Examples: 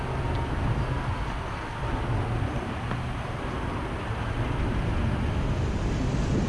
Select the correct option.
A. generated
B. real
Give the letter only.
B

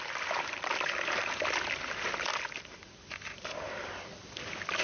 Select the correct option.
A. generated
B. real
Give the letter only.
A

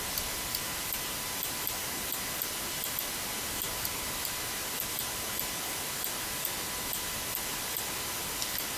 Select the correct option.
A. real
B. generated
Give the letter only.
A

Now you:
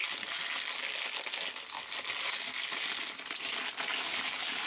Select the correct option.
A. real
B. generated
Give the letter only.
A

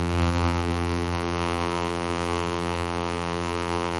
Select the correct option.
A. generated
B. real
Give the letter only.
A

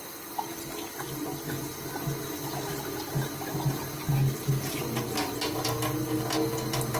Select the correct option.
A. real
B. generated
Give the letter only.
A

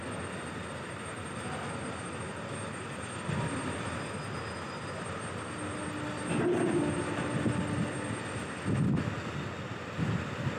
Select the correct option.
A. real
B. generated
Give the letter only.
A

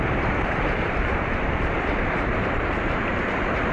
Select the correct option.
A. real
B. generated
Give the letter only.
B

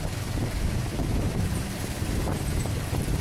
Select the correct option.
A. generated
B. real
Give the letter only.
A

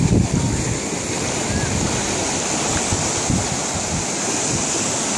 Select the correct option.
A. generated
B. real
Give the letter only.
B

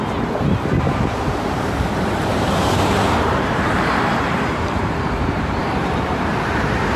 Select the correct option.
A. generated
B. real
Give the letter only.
A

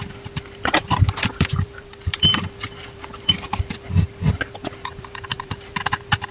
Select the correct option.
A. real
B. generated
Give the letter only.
B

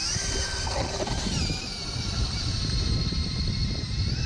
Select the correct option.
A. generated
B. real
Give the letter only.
A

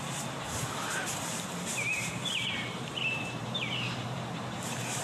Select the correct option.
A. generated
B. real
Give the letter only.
A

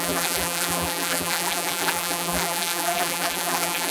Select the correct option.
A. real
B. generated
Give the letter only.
B